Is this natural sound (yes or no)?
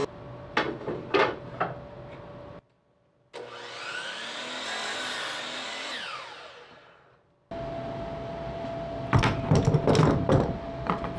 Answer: yes